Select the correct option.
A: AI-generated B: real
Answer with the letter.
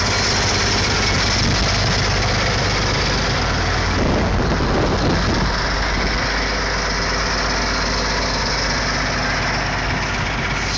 B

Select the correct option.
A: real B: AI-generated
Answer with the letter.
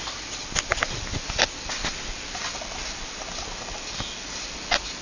A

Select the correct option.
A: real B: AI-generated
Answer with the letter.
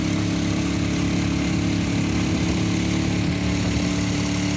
A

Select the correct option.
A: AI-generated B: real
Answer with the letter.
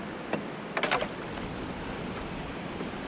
B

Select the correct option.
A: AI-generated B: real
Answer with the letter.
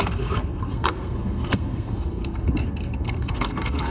A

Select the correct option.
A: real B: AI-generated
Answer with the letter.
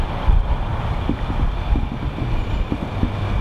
A